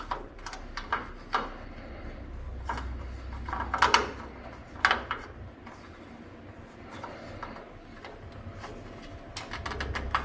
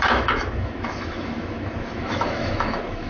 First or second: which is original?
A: first